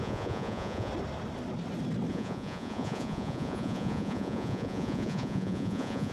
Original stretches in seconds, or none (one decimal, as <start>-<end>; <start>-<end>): 0.9-2.1